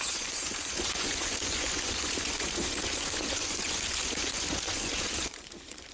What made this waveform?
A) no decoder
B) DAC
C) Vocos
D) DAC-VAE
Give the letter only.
C